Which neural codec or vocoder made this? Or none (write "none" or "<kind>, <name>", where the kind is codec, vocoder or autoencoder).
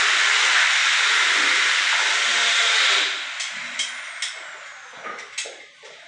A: none